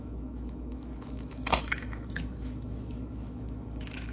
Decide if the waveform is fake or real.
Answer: fake